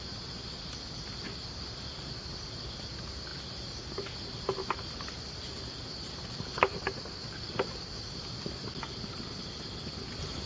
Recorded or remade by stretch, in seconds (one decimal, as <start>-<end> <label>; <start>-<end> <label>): 0.0-10.5 recorded